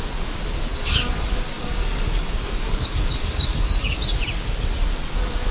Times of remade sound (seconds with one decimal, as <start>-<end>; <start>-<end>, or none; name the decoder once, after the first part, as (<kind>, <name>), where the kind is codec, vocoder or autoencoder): 0.7-4.0 (codec, DAC)

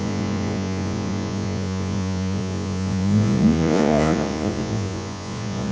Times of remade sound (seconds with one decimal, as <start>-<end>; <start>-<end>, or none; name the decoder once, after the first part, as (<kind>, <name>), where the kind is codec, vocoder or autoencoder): 0.0-5.7 (vocoder, Vocos)